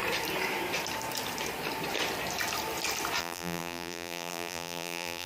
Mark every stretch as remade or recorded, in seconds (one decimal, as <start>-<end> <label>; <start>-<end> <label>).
0.0-3.2 recorded; 3.2-5.3 remade